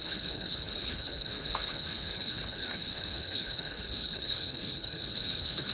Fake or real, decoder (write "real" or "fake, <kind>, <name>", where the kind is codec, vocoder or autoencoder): fake, codec, HILCodec